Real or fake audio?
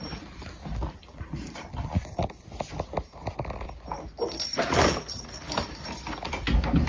real